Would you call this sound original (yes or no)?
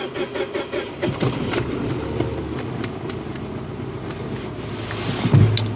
yes